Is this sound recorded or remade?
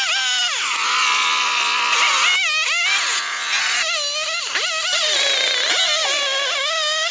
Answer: recorded